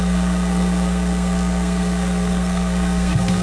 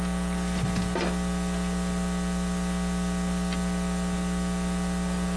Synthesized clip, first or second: first